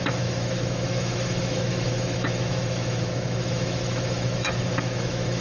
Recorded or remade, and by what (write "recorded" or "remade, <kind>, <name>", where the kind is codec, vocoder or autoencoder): remade, autoencoder, DAC-VAE